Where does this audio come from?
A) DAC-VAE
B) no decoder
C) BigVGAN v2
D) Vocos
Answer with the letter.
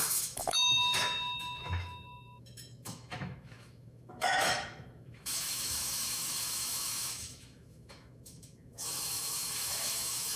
A